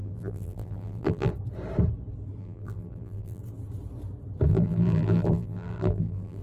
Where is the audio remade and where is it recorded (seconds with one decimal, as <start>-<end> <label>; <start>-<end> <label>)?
0.0-1.3 remade; 1.3-2.4 recorded; 2.4-3.4 remade; 3.4-4.5 recorded; 4.5-6.4 remade